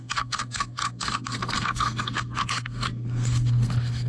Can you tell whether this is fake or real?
fake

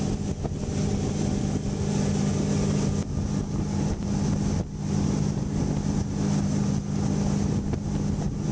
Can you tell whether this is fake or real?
real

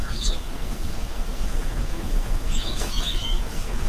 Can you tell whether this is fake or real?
fake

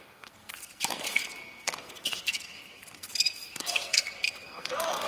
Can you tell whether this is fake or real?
fake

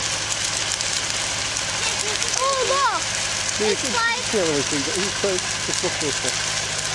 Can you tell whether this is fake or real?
real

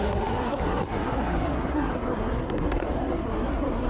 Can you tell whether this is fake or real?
fake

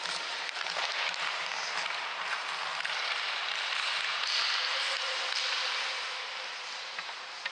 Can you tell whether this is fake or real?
real